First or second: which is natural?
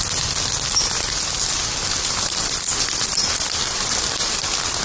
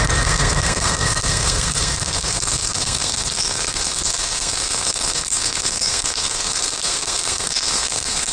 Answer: first